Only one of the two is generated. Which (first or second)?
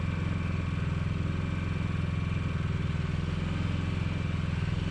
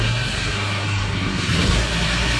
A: second